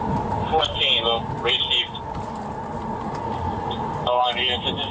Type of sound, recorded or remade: recorded